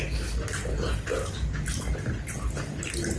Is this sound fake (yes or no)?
no